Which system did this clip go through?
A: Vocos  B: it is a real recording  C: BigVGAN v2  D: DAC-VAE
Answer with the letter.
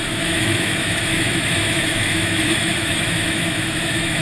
D